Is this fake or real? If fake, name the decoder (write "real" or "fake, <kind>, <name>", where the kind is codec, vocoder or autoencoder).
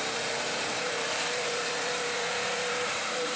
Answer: fake, vocoder, BigVGAN v2